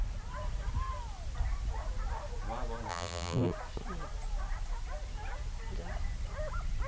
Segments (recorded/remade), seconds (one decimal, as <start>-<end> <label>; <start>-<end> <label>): 0.0-2.9 recorded; 2.9-3.5 remade; 3.5-6.9 recorded